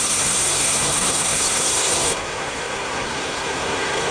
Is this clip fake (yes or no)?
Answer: yes